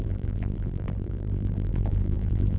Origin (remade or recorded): remade